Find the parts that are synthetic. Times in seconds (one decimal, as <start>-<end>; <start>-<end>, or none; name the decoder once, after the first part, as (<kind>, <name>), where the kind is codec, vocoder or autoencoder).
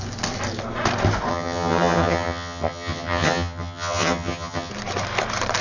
1.3-4.7 (vocoder, HiFi-GAN)